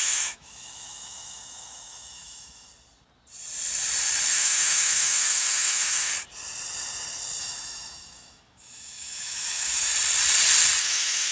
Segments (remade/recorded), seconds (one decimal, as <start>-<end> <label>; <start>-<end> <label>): 0.0-2.7 remade; 2.7-4.3 recorded; 4.3-6.1 remade; 6.1-7.4 recorded; 7.4-9.9 remade; 9.9-10.8 recorded; 10.8-11.3 remade